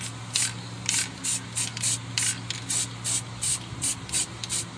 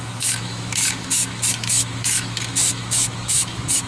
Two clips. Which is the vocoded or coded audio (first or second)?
second